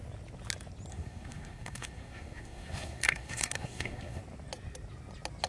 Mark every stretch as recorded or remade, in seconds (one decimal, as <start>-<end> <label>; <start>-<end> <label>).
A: 0.0-0.9 recorded; 0.9-4.2 remade; 4.2-5.5 recorded